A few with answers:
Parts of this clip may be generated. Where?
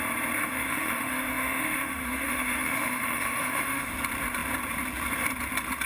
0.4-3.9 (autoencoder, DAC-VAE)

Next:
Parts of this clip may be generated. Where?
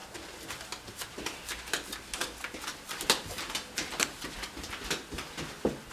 none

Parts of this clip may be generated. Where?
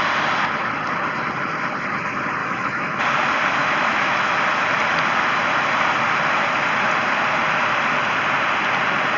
2.4-3.0 (autoencoder, DAC-VAE); 3.6-4.3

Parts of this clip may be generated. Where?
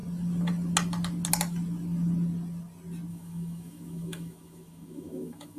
3.1-5.6 (autoencoder, DAC-VAE)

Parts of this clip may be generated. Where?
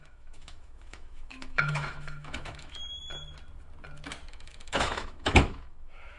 0.0-2.8 (autoencoder, DAC-VAE); 4.3-6.2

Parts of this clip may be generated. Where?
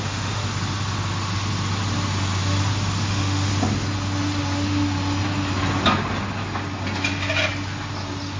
0.0-0.4 (autoencoder, DAC-VAE); 3.1-3.5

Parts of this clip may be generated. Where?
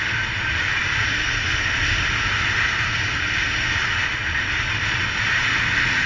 none